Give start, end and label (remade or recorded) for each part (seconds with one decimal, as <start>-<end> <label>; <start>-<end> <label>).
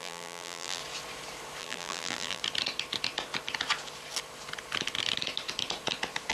0.0-0.8 remade; 0.8-1.6 recorded; 1.6-2.4 remade; 2.4-6.3 recorded